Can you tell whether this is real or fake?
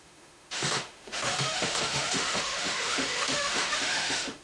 fake